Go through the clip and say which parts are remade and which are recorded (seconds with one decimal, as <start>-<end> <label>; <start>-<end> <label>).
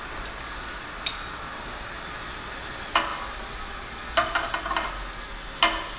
0.0-3.1 recorded; 3.1-4.6 remade; 4.6-6.0 recorded